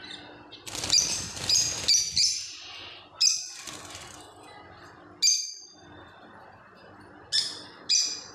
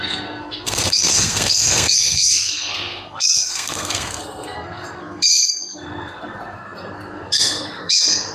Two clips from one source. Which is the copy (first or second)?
second